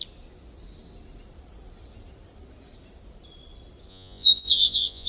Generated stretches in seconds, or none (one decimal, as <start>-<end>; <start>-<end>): 3.9-5.1